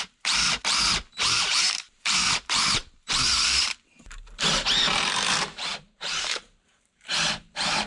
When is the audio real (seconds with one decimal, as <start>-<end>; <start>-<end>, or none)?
none